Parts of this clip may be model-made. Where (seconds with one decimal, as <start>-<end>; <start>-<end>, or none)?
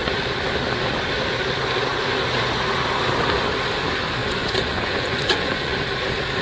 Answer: 4.2-5.8